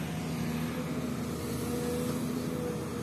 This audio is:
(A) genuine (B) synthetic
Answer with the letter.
A